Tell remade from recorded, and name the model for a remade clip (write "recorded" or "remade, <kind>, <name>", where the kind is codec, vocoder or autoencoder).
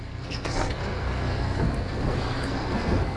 remade, codec, SNAC